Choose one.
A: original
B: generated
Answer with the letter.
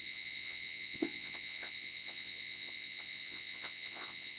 B